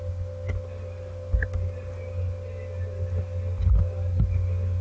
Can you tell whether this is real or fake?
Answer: real